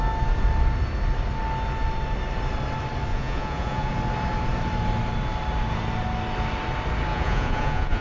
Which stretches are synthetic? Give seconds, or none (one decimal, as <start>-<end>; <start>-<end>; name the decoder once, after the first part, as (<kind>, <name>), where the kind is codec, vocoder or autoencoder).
3.1-3.9 (vocoder, Vocos); 7.1-8.0